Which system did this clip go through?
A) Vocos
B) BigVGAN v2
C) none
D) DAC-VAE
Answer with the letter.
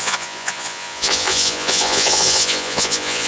A